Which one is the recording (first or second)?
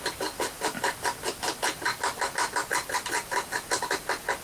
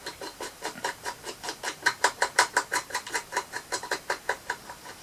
first